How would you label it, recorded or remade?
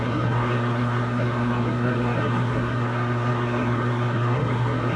remade